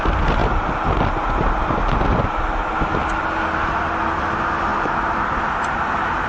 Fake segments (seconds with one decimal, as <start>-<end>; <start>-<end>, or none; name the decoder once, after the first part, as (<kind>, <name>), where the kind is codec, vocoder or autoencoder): none